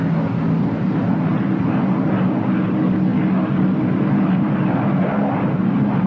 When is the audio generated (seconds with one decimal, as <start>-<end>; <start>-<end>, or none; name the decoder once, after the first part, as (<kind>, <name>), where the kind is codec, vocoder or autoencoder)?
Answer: none